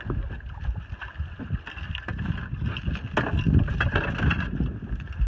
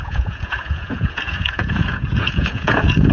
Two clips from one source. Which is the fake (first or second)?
second